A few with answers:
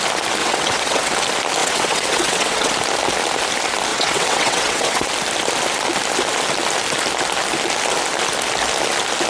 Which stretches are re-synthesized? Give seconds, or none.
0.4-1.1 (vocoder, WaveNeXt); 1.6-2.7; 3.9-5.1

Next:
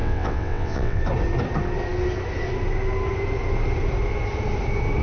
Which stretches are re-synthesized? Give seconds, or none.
0.0-1.0 (vocoder, WaveNeXt)

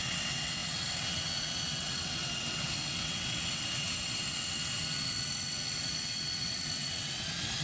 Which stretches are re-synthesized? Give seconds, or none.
0.0-7.6 (vocoder, WaveNeXt)

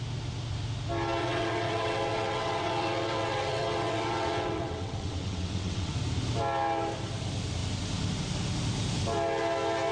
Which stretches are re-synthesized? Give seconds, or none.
1.2-5.9 (vocoder, WaveNeXt)

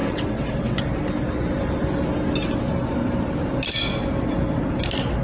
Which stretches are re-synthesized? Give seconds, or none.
0.0-0.8 (vocoder, WaveNeXt)

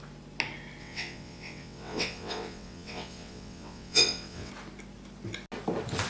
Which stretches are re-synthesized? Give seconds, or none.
0.8-4.5 (vocoder, WaveNeXt)

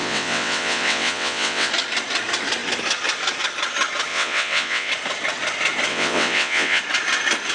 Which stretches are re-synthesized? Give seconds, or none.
0.0-1.7 (vocoder, WaveNeXt); 4.1-4.9; 5.9-6.8

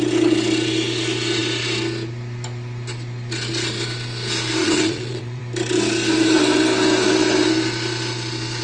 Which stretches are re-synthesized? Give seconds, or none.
4.6-5.4 (vocoder, WaveNeXt)